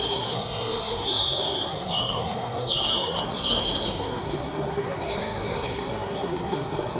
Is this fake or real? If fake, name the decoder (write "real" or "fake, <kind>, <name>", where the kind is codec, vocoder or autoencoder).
fake, codec, SNAC